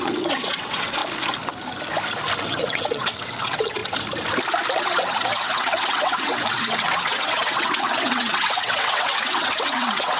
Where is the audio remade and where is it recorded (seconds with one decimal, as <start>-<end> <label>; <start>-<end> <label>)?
0.0-1.0 remade; 1.0-2.4 recorded; 2.4-3.8 remade; 3.8-4.8 recorded; 4.8-10.2 remade